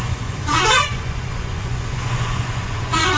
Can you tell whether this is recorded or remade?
remade